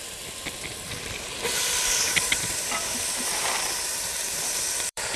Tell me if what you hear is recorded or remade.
remade